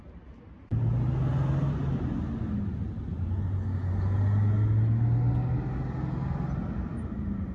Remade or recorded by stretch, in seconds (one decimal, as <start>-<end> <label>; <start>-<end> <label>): 0.0-7.5 recorded